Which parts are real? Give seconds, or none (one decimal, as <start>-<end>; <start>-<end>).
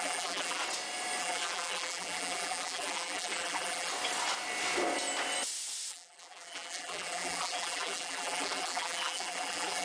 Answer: 0.6-1.2; 3.9-5.9